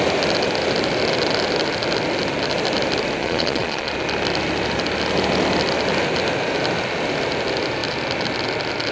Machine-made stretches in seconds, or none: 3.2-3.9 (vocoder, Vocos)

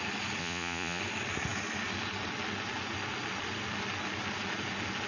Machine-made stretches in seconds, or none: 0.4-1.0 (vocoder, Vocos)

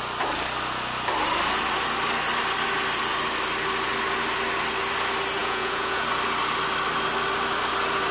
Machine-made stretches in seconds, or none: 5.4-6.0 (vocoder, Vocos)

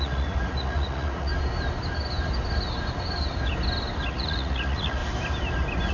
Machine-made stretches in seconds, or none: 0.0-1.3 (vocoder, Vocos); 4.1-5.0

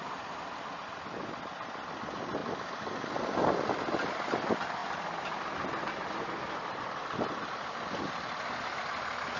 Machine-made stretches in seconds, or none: none